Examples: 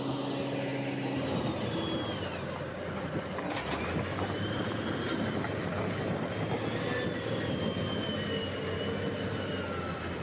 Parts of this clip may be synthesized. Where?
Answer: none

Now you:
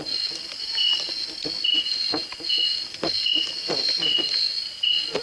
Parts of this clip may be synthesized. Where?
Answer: 1.7-2.3 (vocoder, Vocos)

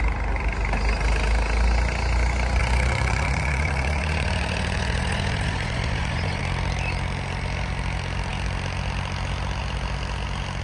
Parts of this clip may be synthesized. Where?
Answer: 2.6-6.4 (vocoder, Vocos)

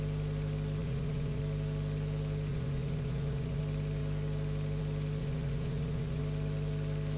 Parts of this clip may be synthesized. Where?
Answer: 0.8-1.4 (vocoder, Vocos); 2.5-3.6; 5.2-6.2

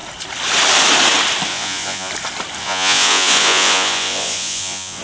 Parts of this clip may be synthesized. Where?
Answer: 1.5-2.1 (vocoder, Vocos); 2.6-5.0

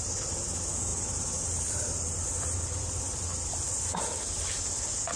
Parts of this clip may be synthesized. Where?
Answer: none

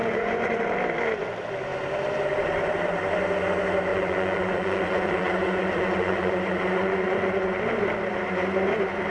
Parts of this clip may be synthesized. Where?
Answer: 0.0-0.6 (vocoder, Vocos); 3.9-7.6

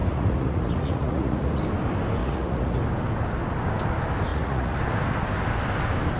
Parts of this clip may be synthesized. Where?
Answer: 0.0-1.6 (vocoder, Vocos); 2.2-2.8; 4.3-4.8